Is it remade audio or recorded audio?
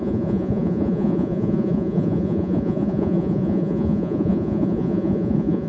remade